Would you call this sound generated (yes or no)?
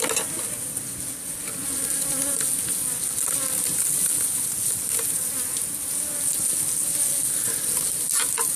no